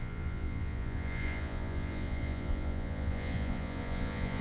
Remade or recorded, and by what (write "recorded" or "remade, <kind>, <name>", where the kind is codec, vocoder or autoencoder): remade, vocoder, Vocos